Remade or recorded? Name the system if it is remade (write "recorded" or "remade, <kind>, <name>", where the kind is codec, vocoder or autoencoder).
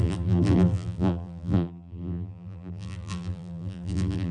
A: remade, vocoder, BigVGAN v2